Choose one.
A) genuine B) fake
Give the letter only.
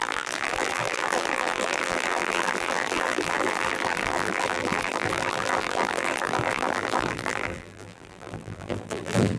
B